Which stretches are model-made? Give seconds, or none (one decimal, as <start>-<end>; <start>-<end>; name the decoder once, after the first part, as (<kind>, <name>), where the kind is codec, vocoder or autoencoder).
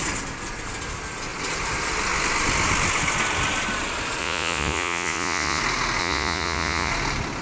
4.2-5.6 (vocoder, Vocos); 6.0-6.9